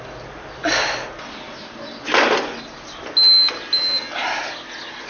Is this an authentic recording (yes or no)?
yes